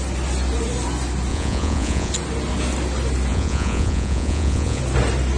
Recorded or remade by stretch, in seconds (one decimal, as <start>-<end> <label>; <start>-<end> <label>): 0.0-1.3 recorded; 1.3-2.1 remade; 2.1-3.3 recorded; 3.3-4.8 remade; 4.8-5.4 recorded